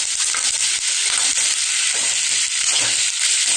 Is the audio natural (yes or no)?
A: yes